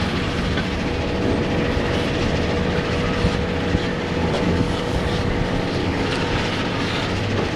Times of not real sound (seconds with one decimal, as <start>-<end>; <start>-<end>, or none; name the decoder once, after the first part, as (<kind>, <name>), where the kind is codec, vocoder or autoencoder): 3.9-5.3 (codec, DAC); 5.8-6.3